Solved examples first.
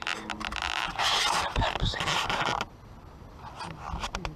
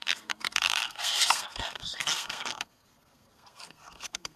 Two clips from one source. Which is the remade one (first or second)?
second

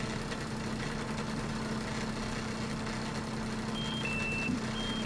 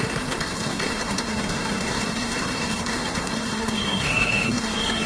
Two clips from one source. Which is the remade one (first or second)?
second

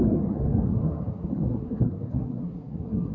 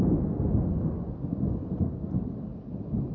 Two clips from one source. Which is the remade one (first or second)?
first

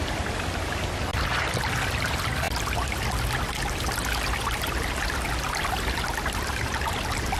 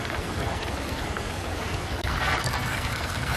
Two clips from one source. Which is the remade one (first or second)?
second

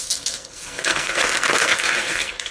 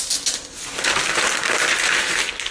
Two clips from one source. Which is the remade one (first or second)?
first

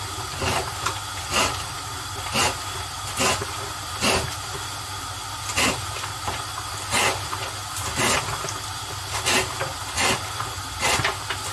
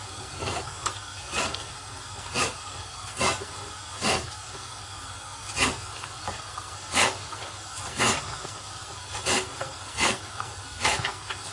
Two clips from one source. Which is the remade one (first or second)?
second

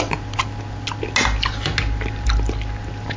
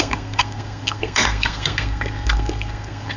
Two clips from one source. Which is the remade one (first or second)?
second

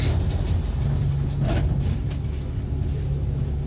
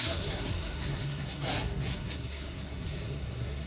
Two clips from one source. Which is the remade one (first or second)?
second